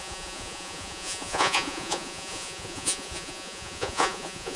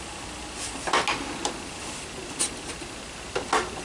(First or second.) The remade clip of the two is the first